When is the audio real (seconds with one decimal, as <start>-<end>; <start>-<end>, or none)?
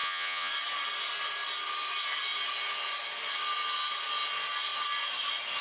0.5-5.6